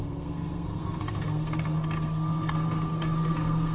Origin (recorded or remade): remade